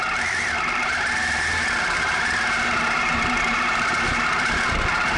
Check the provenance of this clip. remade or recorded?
remade